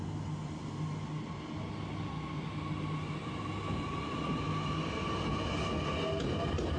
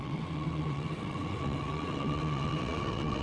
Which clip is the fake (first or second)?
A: second